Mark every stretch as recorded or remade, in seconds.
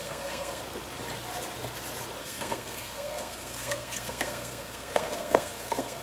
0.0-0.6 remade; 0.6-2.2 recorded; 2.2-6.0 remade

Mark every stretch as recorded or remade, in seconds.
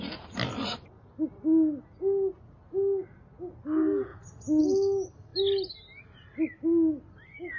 0.0-7.6 recorded